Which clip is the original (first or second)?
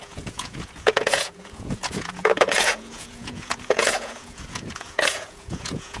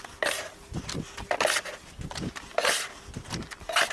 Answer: second